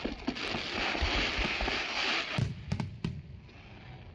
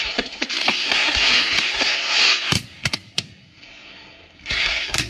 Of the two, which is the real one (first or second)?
first